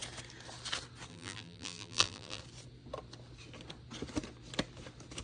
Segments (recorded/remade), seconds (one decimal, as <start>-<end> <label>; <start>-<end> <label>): 0.0-1.1 recorded; 1.1-2.4 remade; 2.4-5.2 recorded